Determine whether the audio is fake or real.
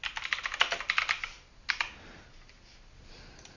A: real